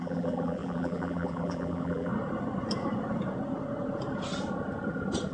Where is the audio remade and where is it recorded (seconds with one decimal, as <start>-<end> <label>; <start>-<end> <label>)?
0.0-2.1 remade; 2.1-5.3 recorded